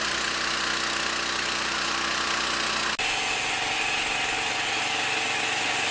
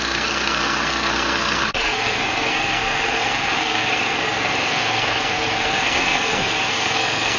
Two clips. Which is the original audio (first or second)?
first